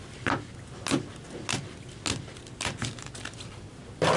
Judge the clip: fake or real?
real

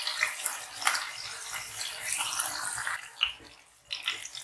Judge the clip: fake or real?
real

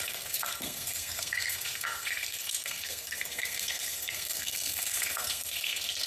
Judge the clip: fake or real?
fake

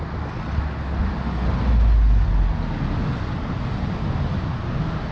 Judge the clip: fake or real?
real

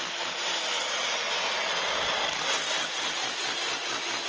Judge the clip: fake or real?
real